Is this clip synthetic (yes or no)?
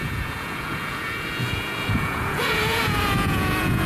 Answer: yes